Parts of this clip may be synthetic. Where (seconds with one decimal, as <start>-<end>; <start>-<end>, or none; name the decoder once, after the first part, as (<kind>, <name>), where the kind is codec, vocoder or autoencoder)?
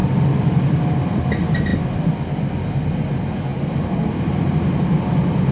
none